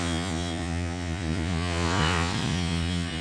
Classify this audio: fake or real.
fake